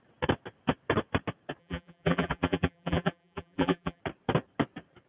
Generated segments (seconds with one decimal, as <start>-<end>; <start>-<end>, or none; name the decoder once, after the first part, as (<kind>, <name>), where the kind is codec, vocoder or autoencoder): 1.6-4.0 (vocoder, BigVGAN v2)